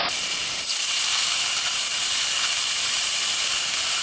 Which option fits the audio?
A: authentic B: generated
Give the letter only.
B